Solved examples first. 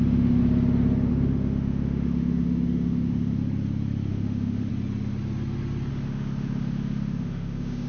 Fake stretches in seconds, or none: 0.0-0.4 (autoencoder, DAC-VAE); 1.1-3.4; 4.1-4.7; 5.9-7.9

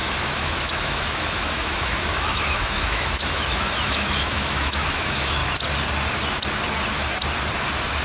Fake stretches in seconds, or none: 0.0-5.4 (autoencoder, DAC-VAE)

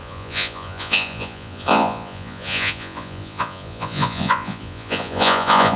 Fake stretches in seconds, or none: 0.0-5.8 (vocoder, Vocos)

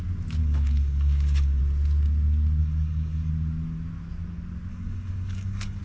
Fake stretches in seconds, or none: 0.4-1.6 (codec, DAC); 2.6-3.3; 4.7-5.8

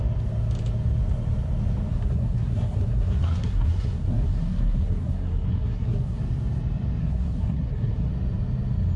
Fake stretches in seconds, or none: 1.9-6.2 (codec, SNAC); 7.0-8.1

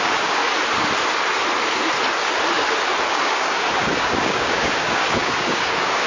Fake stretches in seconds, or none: 0.0-0.4 (codec, DAC); 3.1-6.1